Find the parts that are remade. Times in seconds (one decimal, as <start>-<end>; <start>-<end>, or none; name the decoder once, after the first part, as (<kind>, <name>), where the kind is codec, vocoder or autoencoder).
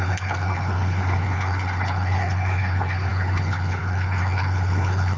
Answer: 0.0-5.2 (codec, HILCodec)